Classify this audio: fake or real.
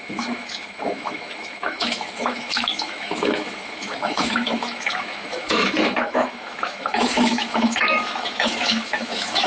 fake